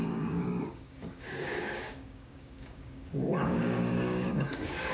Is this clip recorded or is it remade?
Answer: remade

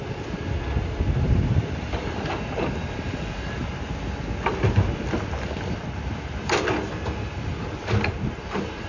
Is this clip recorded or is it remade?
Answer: recorded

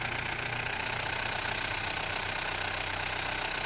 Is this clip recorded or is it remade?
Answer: recorded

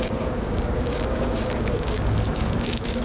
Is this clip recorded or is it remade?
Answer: remade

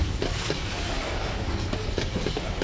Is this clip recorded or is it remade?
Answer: remade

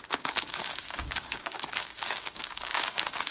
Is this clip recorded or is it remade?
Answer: remade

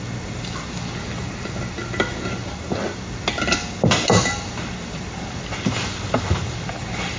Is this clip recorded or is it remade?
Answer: recorded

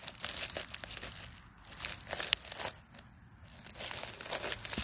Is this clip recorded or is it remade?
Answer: recorded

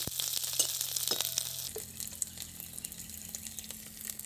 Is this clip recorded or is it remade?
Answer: recorded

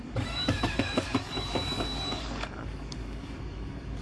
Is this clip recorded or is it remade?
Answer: remade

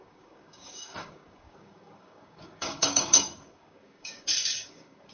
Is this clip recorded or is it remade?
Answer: remade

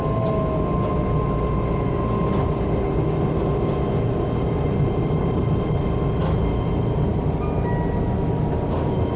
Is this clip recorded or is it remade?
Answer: recorded